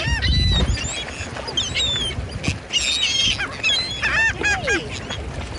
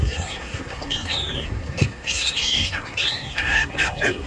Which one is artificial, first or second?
second